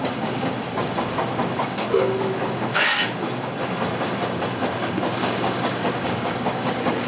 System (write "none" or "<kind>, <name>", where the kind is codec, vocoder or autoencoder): codec, DAC